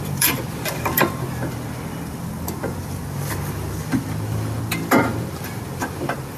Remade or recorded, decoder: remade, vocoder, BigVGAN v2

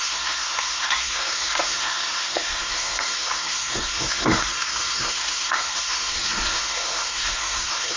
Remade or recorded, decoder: remade, codec, SNAC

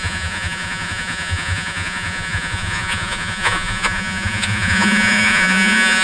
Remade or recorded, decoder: remade, vocoder, Vocos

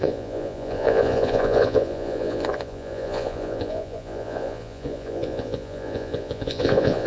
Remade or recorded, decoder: remade, vocoder, Vocos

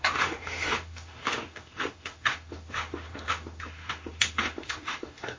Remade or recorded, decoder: remade, autoencoder, DAC-VAE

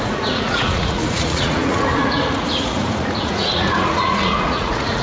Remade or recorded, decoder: remade, vocoder, Vocos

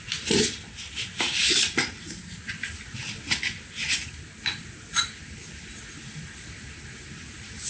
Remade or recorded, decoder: recorded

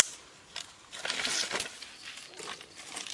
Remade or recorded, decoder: recorded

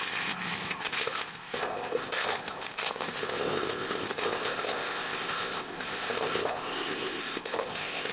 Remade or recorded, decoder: remade, codec, ZipCodec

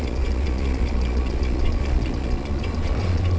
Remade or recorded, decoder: remade, vocoder, Vocos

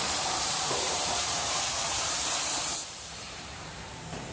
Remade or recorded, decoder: remade, vocoder, BigVGAN v2